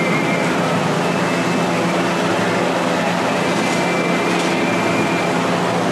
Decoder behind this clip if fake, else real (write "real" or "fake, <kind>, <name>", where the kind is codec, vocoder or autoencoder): real